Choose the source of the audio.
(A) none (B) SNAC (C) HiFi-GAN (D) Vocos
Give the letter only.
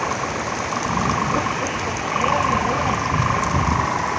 A